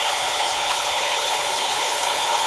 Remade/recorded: remade